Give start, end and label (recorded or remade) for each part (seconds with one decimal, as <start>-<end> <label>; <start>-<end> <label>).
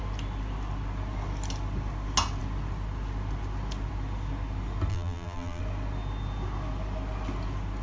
0.0-4.9 recorded; 4.9-5.6 remade; 5.6-7.8 recorded